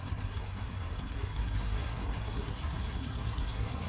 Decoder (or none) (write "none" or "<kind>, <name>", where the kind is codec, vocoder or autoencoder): codec, SNAC